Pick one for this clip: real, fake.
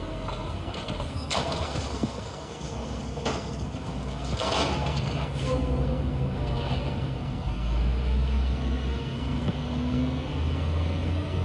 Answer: fake